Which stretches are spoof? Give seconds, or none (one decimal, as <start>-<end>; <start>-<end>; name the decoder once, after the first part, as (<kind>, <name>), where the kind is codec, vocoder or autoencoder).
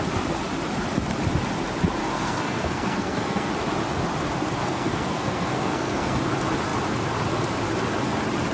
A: 2.0-3.5 (codec, SNAC); 4.6-6.2